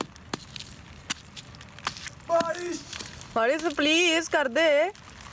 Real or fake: real